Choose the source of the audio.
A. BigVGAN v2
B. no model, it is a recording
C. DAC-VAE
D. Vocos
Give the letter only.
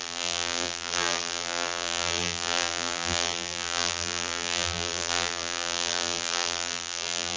A